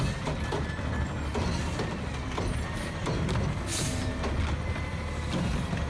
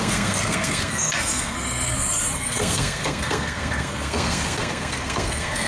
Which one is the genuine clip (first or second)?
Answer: first